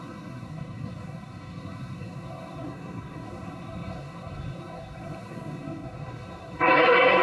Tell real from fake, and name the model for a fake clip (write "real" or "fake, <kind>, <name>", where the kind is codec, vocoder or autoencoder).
fake, codec, SNAC